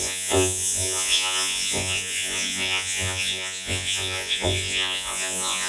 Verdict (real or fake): fake